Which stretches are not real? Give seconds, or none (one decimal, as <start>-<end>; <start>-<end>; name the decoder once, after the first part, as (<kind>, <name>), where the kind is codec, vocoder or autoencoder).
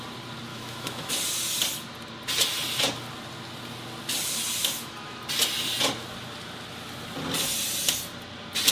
0.5-1.1 (autoencoder, DAC-VAE); 4.6-5.2